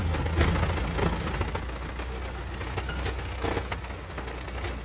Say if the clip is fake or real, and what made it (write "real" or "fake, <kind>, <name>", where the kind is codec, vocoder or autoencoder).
real